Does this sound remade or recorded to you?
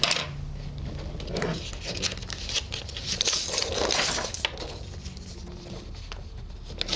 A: recorded